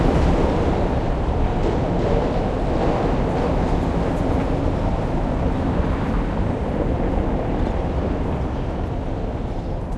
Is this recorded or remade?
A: recorded